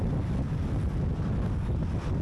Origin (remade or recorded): recorded